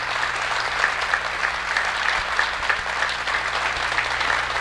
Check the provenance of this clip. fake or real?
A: real